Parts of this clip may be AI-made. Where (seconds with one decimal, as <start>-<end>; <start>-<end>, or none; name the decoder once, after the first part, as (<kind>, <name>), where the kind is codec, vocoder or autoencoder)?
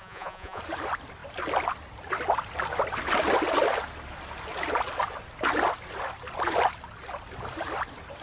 0.0-0.6 (vocoder, Vocos)